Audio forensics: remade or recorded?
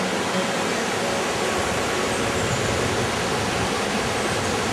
recorded